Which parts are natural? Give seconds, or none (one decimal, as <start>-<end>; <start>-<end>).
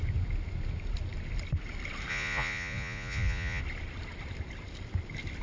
0.0-2.1; 3.6-5.4